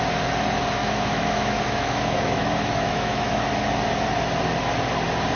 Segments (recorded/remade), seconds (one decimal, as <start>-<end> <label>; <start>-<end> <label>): 0.0-0.8 recorded; 0.8-3.4 remade; 3.4-5.3 recorded